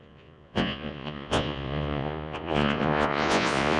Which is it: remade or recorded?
remade